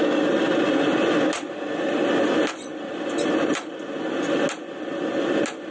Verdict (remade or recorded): recorded